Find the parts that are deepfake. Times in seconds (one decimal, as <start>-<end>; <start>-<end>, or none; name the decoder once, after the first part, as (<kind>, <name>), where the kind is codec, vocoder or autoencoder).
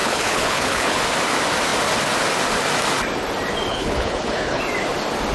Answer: 0.0-1.0 (codec, HILCodec); 3.7-4.6